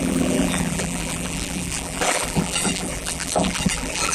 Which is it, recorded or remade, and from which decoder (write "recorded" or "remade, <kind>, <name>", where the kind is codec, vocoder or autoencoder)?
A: remade, vocoder, BigVGAN v2